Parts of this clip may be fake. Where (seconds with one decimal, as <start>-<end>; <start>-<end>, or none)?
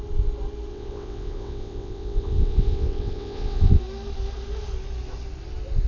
0.7-3.8